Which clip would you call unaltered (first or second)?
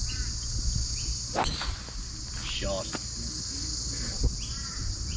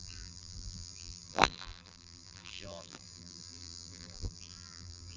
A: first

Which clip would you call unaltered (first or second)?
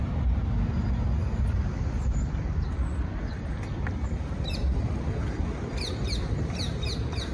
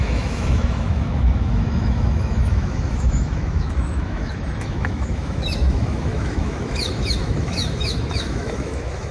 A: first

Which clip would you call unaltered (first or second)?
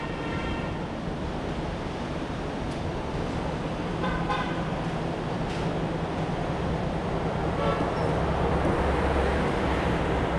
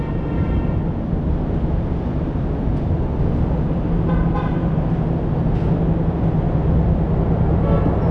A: second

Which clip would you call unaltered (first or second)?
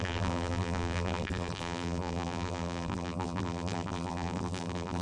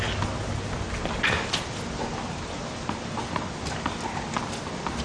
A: second